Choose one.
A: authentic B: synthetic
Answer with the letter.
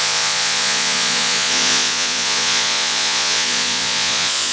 B